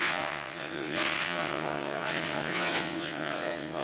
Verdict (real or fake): fake